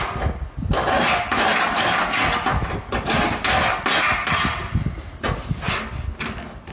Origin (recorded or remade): recorded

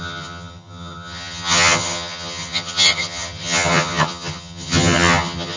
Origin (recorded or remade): remade